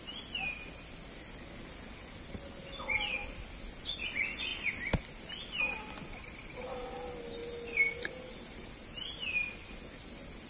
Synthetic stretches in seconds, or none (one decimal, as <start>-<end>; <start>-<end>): none